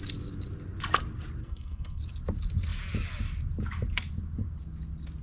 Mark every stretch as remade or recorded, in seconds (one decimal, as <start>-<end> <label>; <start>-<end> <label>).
0.0-1.4 recorded; 1.4-2.0 remade; 2.0-5.2 recorded